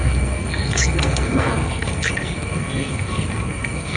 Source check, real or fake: fake